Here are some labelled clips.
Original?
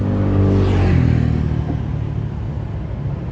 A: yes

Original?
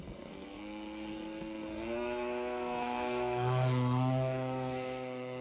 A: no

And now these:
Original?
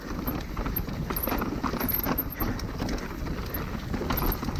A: yes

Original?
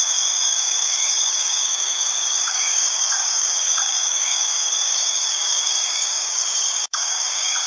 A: no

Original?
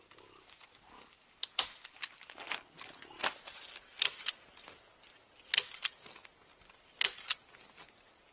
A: yes